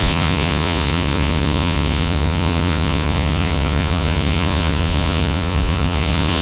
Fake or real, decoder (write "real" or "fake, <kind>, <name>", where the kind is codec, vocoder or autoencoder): fake, vocoder, Vocos